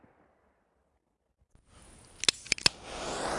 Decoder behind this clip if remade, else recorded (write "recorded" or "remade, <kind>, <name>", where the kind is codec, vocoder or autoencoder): recorded